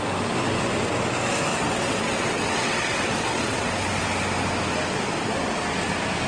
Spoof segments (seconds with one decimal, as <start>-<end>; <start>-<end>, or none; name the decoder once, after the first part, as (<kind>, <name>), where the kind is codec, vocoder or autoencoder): 1.5-3.7 (vocoder, WaveNeXt)